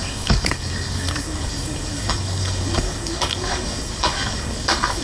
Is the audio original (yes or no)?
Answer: no